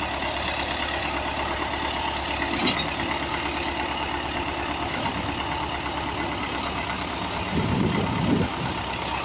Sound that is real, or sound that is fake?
real